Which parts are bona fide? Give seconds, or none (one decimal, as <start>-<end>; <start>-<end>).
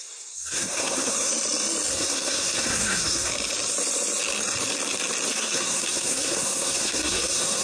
1.3-1.9; 3.3-5.3